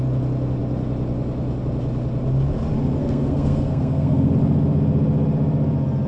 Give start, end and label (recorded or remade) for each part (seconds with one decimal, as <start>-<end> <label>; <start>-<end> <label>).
0.0-3.0 recorded; 3.0-4.3 remade; 4.3-6.1 recorded